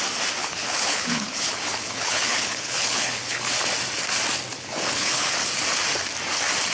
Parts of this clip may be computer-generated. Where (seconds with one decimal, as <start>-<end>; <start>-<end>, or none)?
0.4-3.5; 4.5-5.3